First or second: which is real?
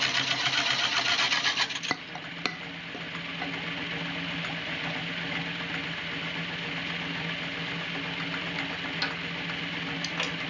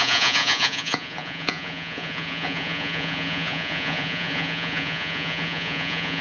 first